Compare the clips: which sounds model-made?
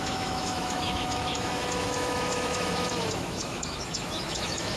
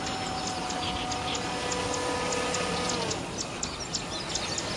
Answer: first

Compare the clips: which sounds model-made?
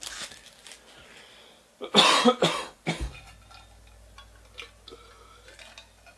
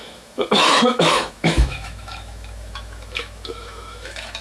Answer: second